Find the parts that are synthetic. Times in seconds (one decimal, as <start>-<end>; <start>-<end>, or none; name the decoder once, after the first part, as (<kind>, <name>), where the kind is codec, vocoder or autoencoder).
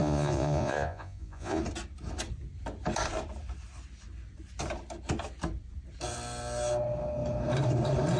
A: 0.0-1.6 (vocoder, Vocos)